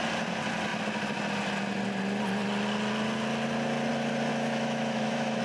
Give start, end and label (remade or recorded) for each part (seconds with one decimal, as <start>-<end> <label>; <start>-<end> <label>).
0.0-4.3 recorded; 4.3-5.4 remade